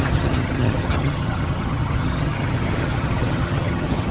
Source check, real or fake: fake